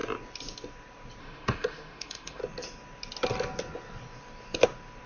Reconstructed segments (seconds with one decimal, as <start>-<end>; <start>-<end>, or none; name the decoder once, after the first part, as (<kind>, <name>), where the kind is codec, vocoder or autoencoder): 1.2-2.4 (autoencoder, DAC-VAE)